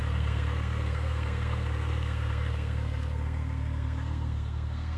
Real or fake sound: fake